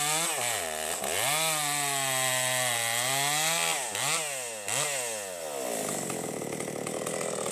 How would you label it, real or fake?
real